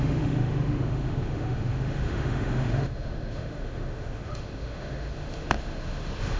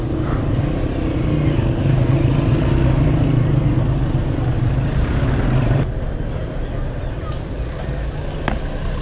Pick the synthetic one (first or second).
first